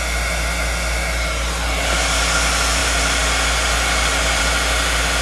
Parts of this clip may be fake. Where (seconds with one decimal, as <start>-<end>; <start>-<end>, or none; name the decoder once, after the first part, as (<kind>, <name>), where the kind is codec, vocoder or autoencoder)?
none